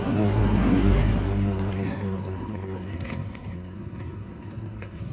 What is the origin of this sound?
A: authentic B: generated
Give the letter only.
B